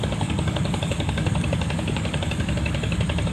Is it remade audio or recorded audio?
remade